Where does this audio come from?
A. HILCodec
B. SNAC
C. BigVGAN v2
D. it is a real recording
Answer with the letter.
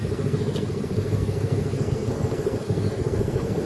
B